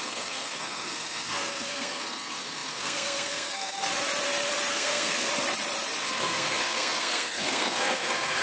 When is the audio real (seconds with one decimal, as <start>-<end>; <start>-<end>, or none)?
3.9-4.7; 5.3-6.0